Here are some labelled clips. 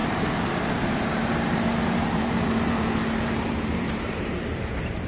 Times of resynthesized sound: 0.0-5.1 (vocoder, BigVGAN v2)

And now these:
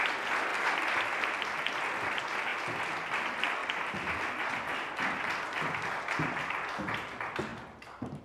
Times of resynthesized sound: none

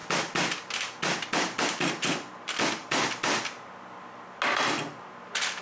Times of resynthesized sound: none

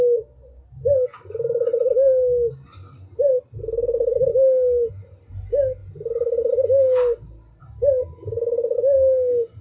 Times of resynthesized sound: none

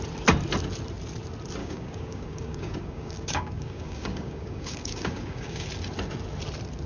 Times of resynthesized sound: 1.6-5.7 (codec, DAC)

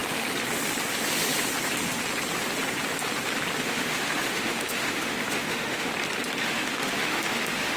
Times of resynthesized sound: 3.6-5.9 (autoencoder, DAC-VAE); 6.4-7.8